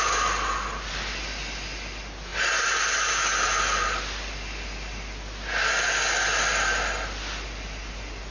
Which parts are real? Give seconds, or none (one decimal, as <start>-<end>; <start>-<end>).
0.0-8.3